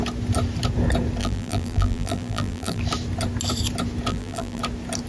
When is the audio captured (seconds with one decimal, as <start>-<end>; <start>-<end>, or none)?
0.0-1.2; 2.8-4.1; 4.6-5.1

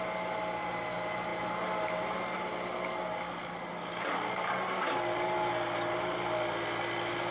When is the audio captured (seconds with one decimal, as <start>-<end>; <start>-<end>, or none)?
0.0-7.3

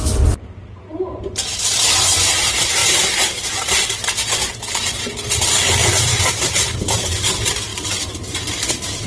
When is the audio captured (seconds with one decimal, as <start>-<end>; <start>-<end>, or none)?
0.0-2.8; 3.8-5.8; 7.3-9.1